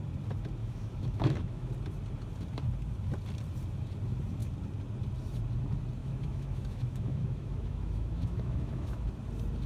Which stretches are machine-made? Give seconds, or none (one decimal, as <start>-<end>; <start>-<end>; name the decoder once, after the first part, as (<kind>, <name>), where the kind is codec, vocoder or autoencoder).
0.6-1.7 (autoencoder, DAC-VAE); 6.0-9.1